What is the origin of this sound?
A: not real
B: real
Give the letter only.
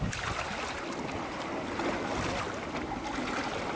B